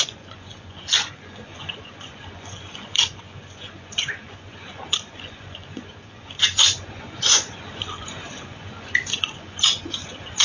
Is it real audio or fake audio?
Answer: fake